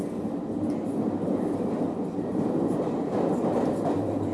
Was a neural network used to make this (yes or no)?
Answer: no